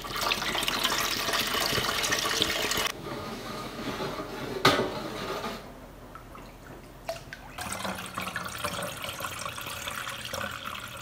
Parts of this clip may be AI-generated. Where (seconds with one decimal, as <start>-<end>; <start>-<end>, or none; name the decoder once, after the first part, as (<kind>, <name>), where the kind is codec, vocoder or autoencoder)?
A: 2.9-3.9 (autoencoder, DAC-VAE)